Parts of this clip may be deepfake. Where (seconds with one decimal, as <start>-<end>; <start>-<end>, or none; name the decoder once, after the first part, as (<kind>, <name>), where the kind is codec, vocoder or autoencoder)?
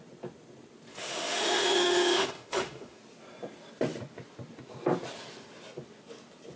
0.9-3.0 (autoencoder, DAC-VAE)